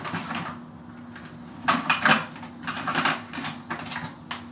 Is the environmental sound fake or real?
real